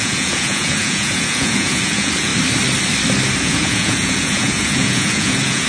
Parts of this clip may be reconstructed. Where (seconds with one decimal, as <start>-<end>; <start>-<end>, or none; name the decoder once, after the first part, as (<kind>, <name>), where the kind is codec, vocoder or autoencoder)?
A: 0.0-2.3 (vocoder, Vocos); 3.4-5.7